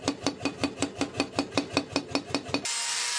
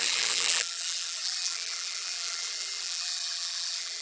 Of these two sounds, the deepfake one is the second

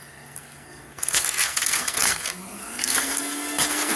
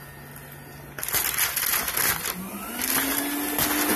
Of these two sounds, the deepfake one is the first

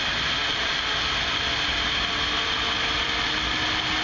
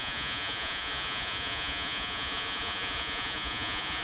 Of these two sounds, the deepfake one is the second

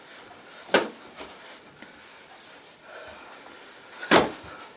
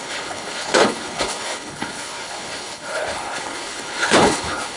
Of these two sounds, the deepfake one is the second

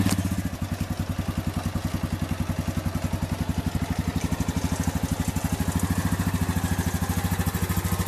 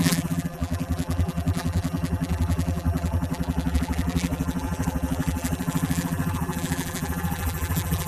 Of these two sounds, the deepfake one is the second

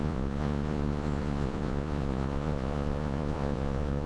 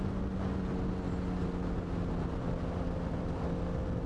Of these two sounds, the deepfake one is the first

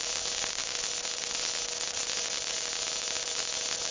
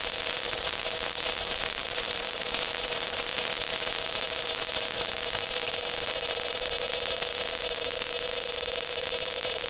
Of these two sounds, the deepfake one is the second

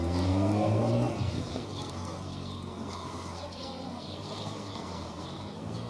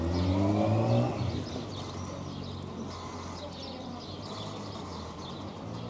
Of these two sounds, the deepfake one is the first